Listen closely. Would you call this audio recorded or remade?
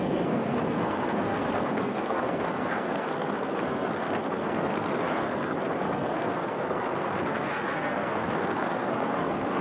remade